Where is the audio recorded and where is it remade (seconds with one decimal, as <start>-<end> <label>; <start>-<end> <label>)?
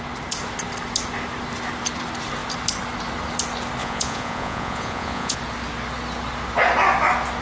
0.0-3.8 recorded; 3.8-5.4 remade; 5.4-7.4 recorded